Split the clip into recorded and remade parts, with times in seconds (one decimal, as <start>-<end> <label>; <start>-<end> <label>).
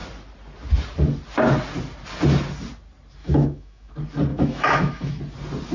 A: 0.0-3.2 recorded; 3.2-3.9 remade; 3.9-4.3 recorded; 4.3-5.2 remade; 5.2-5.7 recorded